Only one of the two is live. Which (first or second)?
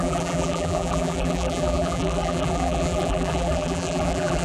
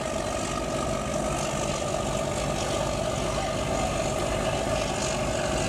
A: second